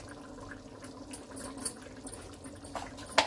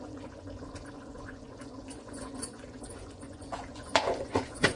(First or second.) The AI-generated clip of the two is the second